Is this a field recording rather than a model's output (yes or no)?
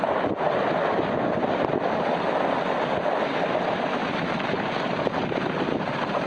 yes